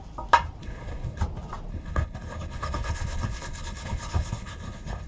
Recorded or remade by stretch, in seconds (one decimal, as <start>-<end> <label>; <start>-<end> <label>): 0.0-0.6 recorded; 0.6-1.2 remade; 1.2-1.7 recorded; 1.7-5.1 remade